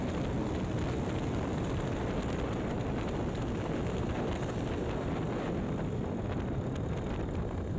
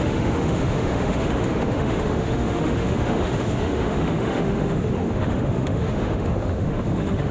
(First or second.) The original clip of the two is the first